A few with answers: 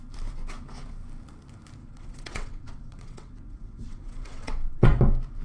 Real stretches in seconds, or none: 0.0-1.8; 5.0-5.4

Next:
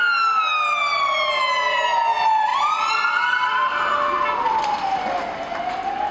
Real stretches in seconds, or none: 0.0-0.8; 1.4-2.5; 3.9-6.1